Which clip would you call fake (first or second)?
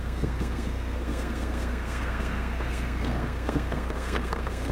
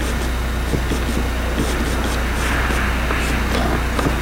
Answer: first